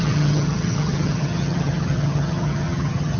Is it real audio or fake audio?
fake